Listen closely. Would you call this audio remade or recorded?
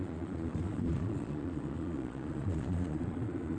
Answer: remade